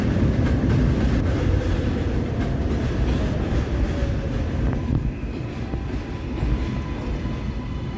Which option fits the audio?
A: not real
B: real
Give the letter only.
A